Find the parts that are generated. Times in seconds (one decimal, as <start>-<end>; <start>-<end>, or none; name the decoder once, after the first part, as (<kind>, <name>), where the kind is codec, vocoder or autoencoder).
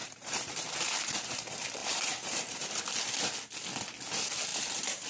0.0-1.4 (vocoder, BigVGAN v2); 1.8-2.8; 4.5-5.1